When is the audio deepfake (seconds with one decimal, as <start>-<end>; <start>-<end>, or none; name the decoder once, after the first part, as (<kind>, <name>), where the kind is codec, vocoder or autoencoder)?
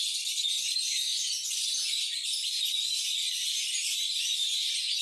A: 3.4-4.1 (vocoder, BigVGAN v2)